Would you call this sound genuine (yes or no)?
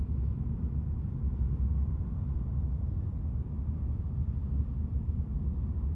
yes